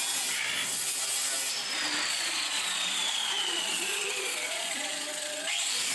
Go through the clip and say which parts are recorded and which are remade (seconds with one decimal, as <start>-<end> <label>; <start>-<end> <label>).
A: 0.0-2.1 recorded; 2.1-5.9 remade